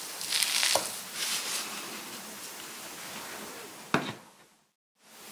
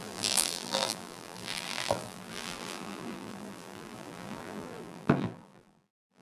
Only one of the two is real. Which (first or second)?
first